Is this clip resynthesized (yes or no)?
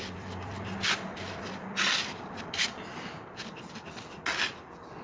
no